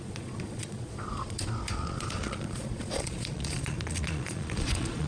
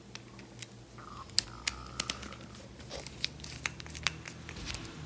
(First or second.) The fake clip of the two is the first